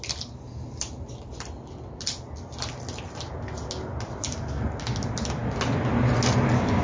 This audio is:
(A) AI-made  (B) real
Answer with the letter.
B